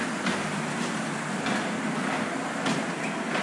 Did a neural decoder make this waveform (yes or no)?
no